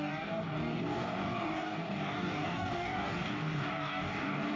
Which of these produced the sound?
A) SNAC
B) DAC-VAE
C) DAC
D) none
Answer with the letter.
C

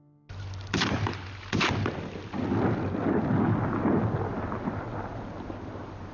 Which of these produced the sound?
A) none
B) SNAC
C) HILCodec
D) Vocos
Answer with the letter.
A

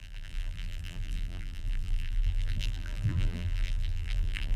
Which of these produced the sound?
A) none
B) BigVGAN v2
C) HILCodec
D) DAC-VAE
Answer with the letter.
B